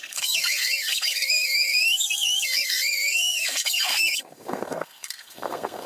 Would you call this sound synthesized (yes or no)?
yes